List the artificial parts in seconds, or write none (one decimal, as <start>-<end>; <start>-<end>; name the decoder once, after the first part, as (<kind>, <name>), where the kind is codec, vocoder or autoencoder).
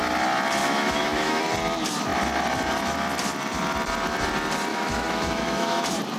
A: 0.6-1.4 (autoencoder, DAC-VAE); 4.7-5.8